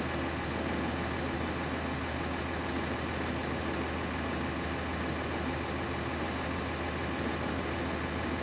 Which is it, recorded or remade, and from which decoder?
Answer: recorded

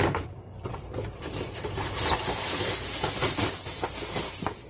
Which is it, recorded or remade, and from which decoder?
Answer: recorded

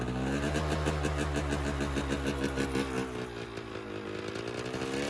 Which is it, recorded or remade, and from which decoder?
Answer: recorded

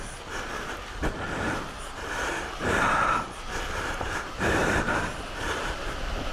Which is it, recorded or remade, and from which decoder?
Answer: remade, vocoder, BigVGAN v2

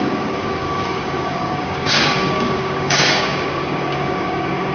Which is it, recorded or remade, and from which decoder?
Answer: remade, codec, DAC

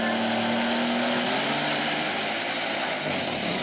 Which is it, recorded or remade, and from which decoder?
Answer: recorded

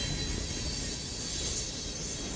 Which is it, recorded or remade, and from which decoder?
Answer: recorded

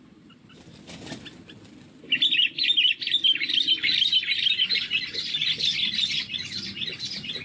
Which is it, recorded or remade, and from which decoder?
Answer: recorded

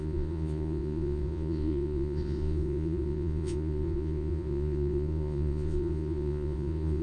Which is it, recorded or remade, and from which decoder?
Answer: remade, vocoder, Vocos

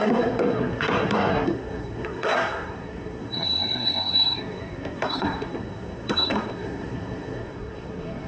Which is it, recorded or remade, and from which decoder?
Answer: remade, codec, SNAC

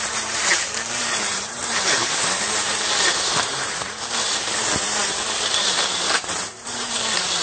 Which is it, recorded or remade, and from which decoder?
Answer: remade, vocoder, BigVGAN v2